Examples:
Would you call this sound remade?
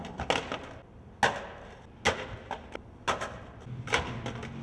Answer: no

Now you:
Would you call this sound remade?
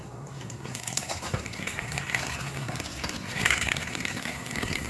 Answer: yes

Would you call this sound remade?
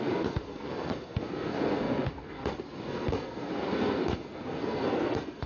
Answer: yes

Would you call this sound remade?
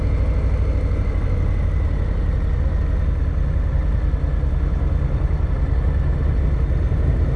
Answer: no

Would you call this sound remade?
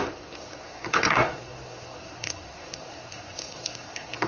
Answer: yes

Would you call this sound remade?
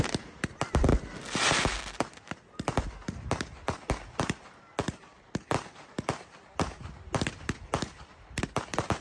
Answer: no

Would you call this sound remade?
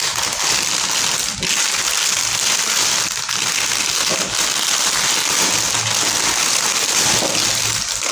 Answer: no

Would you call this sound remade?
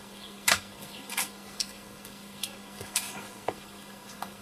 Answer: yes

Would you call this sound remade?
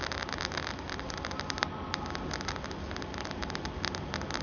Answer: no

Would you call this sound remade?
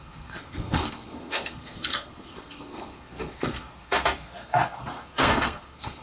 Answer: yes